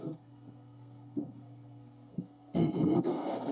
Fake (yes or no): yes